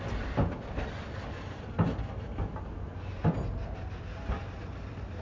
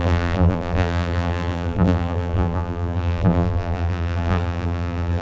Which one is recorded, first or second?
first